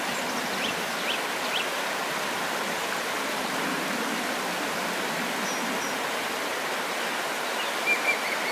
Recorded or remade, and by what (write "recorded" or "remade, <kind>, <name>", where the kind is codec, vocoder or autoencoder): recorded